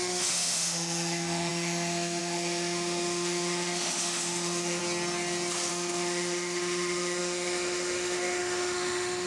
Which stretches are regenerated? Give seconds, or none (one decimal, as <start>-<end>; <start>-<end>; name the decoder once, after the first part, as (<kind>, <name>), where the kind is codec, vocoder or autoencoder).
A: 0.0-4.8 (autoencoder, DAC-VAE); 5.7-9.3